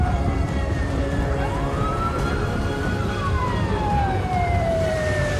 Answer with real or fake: fake